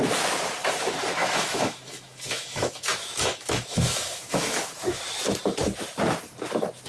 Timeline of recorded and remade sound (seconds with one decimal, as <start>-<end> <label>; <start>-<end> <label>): 0.0-1.2 recorded; 1.2-5.0 remade; 5.0-6.9 recorded